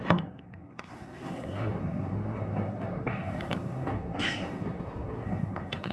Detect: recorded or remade remade